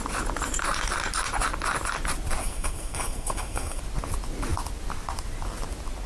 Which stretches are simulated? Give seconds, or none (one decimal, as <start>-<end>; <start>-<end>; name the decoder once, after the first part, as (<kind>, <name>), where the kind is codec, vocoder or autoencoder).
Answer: 2.4-3.8 (codec, SNAC)